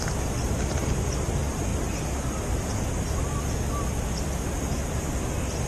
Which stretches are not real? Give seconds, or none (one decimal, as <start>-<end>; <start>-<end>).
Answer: 0.0-3.3; 4.9-5.7